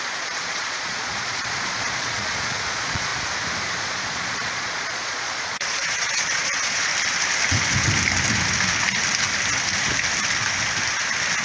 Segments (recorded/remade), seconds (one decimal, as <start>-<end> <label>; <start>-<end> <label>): 0.0-3.1 remade; 3.1-3.8 recorded; 3.8-6.9 remade; 6.9-11.4 recorded